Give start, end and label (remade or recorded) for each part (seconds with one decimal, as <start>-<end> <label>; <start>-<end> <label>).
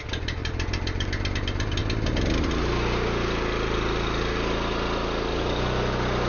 0.0-6.3 recorded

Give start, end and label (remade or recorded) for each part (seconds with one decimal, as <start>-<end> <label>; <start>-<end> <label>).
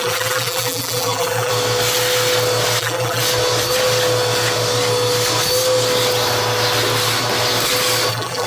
0.0-1.5 remade; 1.5-2.8 recorded; 2.8-3.2 remade; 3.2-8.1 recorded; 8.1-8.5 remade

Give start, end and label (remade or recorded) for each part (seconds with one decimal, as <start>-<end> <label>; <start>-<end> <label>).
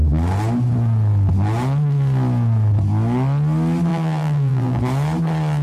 0.0-3.9 recorded; 3.9-4.8 remade; 4.8-5.6 recorded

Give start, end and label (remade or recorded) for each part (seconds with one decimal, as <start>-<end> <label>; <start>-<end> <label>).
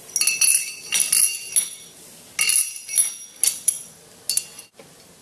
0.0-5.2 recorded